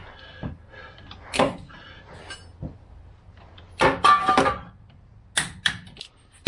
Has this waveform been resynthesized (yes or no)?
no